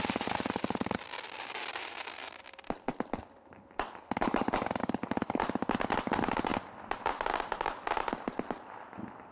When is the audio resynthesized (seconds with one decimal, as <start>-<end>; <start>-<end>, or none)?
1.7-2.4